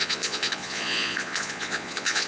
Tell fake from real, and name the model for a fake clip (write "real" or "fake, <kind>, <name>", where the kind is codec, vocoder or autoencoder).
fake, vocoder, Vocos